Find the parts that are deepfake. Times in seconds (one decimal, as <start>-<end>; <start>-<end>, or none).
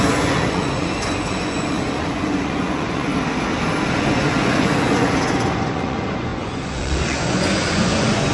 0.0-3.1; 3.8-8.3